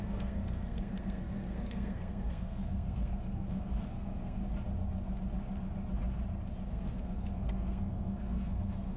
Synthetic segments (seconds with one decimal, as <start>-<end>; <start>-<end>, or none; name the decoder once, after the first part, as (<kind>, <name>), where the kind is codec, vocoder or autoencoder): 0.0-4.4 (codec, SNAC); 6.7-9.0